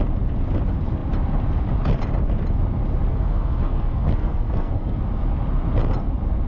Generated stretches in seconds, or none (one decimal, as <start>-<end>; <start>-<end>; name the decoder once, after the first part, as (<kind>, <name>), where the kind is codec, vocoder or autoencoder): 3.1-5.0 (codec, SNAC)